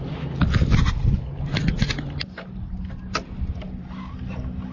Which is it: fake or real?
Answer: real